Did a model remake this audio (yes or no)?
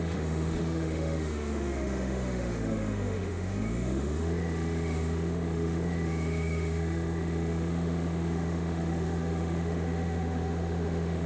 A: yes